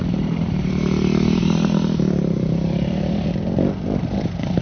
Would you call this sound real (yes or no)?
no